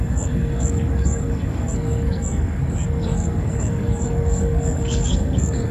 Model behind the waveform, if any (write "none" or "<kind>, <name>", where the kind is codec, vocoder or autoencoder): codec, SNAC